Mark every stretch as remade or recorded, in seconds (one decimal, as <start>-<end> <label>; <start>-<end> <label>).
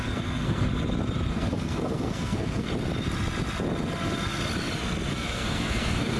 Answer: 0.0-0.7 remade; 0.7-1.3 recorded; 1.3-2.7 remade; 2.7-5.1 recorded; 5.1-6.2 remade